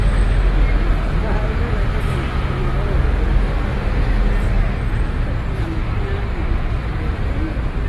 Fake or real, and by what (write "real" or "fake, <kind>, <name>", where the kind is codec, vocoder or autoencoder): real